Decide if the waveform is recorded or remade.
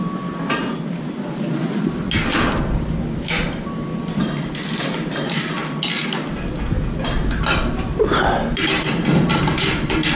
recorded